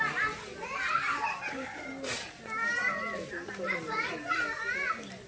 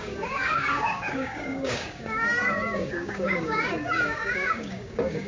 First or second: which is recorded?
first